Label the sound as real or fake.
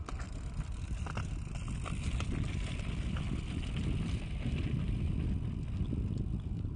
real